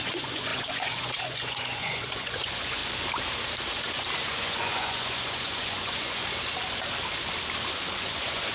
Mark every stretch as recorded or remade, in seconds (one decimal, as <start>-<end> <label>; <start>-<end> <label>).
0.0-2.8 remade; 2.8-4.2 recorded; 4.2-6.2 remade; 6.2-8.0 recorded; 8.0-8.5 remade